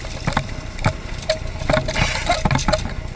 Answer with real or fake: real